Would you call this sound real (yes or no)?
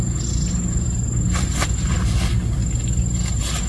yes